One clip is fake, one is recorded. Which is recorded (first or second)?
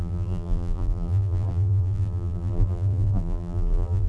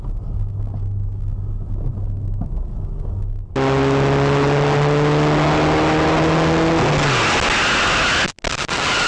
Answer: second